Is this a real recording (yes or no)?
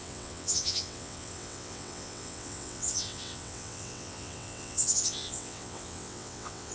no